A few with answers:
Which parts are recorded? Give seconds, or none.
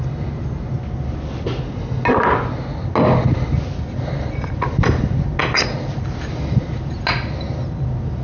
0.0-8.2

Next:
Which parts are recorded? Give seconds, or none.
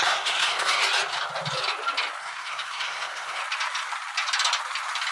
0.8-2.2; 3.4-5.1